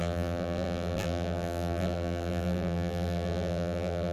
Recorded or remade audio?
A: remade